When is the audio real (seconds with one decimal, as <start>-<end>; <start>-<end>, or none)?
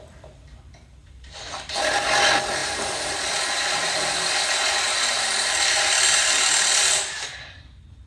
0.0-1.0; 1.8-2.6; 3.2-8.1